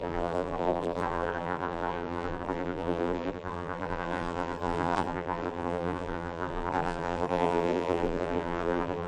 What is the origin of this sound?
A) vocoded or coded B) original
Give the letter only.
A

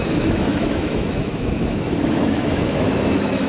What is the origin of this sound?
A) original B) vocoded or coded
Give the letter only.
B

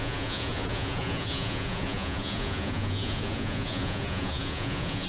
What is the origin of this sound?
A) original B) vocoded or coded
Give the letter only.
B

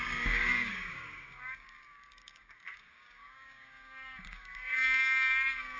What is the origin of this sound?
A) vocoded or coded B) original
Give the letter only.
A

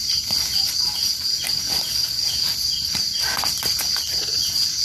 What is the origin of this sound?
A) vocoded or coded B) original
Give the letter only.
B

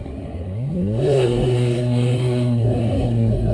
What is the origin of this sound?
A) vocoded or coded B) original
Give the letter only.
A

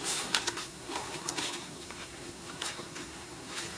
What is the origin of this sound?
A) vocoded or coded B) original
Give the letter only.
A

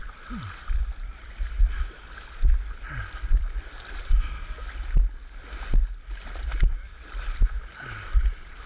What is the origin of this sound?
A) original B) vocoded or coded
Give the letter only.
A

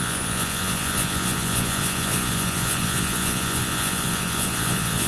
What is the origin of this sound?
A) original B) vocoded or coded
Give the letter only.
B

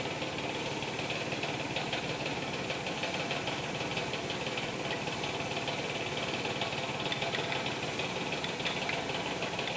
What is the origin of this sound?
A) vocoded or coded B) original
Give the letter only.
A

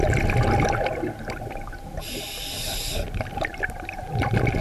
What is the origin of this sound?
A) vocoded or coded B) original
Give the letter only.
B